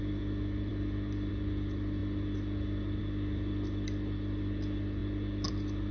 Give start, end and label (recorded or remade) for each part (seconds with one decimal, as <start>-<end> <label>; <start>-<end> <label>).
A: 0.0-5.9 recorded